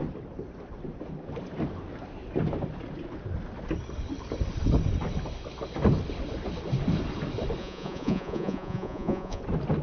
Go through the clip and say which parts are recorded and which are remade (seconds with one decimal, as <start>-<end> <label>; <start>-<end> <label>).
0.0-7.6 recorded; 7.6-9.4 remade; 9.4-9.8 recorded